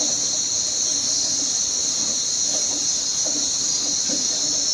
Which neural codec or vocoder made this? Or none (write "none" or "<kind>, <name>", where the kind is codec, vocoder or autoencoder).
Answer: none